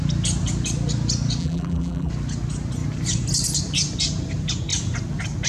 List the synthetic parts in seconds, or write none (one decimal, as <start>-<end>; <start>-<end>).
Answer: 1.4-2.1

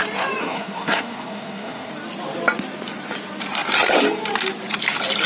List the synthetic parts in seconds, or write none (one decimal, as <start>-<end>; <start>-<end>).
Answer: 0.4-1.9

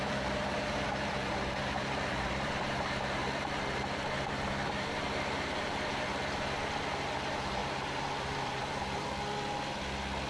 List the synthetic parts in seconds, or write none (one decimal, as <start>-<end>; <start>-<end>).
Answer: 0.0-3.2; 3.7-9.1

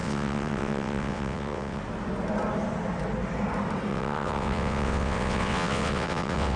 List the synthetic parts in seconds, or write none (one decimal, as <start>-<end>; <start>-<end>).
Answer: 0.0-1.8; 3.9-6.6

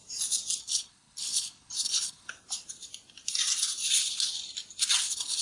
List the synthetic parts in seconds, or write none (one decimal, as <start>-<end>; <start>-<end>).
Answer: 0.6-2.3; 5.0-5.4

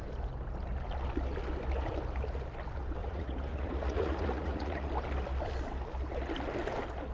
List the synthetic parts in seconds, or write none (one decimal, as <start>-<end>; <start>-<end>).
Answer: 3.0-4.9